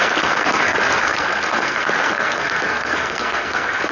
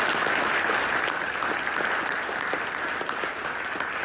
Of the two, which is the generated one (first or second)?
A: first